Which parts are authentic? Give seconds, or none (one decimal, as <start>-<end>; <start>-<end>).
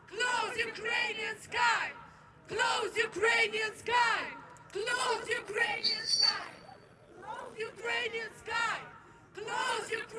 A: 0.0-4.8; 7.8-9.6